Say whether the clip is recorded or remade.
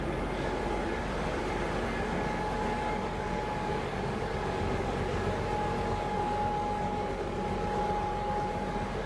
remade